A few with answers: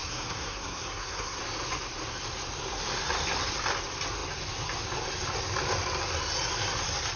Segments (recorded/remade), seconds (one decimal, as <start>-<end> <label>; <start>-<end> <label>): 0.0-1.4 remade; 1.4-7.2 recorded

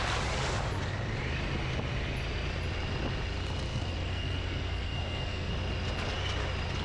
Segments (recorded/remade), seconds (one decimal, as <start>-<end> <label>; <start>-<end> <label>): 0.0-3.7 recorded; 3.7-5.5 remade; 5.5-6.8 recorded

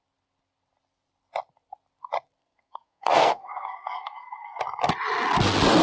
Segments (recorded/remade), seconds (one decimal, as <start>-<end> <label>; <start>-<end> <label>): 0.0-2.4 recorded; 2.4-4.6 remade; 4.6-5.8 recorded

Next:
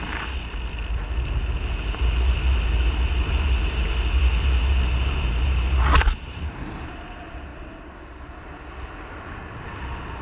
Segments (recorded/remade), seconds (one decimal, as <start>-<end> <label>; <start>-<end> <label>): 0.0-10.2 recorded